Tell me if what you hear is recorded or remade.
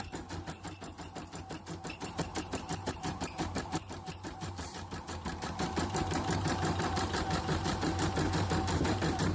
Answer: remade